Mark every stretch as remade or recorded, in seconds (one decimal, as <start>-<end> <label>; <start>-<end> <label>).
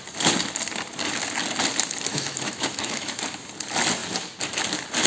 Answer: 0.0-2.1 recorded; 2.1-3.2 remade; 3.2-5.1 recorded